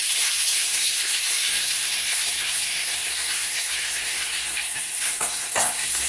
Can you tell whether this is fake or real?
fake